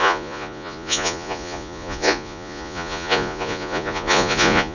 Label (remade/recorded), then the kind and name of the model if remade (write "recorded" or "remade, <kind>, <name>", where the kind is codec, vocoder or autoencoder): remade, vocoder, Vocos